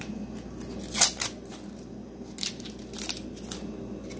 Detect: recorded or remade recorded